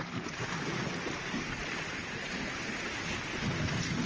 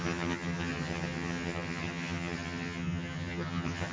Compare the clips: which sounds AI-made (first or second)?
second